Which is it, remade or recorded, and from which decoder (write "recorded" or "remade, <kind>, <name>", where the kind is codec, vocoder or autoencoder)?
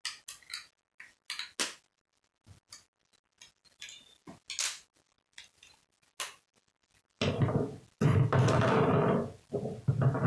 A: recorded